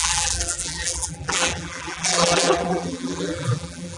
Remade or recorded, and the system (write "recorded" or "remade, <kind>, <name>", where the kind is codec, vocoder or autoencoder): remade, vocoder, BigVGAN v2